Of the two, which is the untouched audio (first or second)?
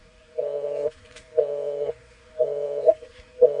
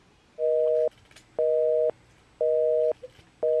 second